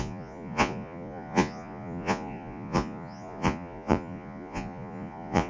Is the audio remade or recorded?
remade